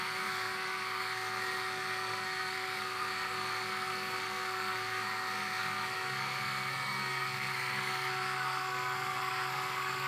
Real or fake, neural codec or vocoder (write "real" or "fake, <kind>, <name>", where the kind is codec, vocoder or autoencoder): fake, codec, SNAC